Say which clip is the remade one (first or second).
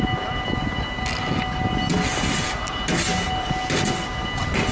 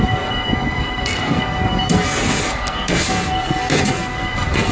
second